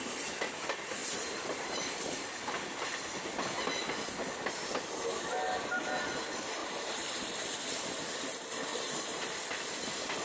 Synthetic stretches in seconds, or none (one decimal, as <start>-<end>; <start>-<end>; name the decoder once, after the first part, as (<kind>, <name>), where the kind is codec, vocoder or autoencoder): 1.0-1.8 (vocoder, BigVGAN v2); 6.6-7.4; 8.7-10.2